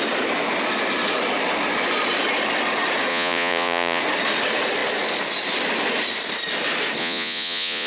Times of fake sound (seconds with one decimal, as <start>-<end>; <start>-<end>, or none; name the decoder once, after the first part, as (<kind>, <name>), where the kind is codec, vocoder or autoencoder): 3.1-4.0 (vocoder, Vocos); 7.0-7.9